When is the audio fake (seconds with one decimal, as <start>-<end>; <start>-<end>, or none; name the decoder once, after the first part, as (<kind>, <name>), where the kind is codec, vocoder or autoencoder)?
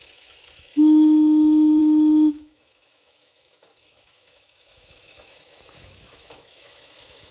0.0-7.3 (autoencoder, DAC-VAE)